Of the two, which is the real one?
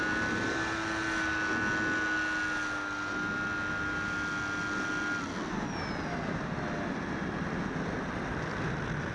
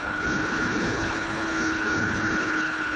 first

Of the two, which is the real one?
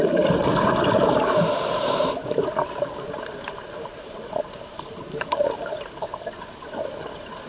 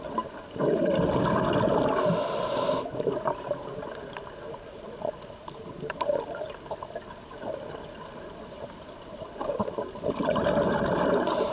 second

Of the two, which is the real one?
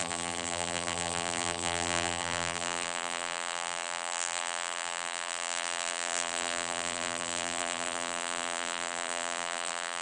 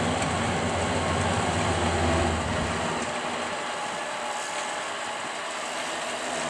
second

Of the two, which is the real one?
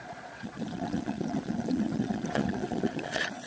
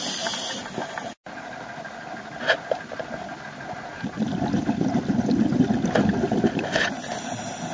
second